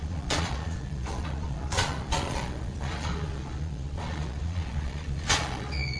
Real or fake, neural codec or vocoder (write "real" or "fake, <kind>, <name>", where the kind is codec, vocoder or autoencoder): fake, vocoder, Vocos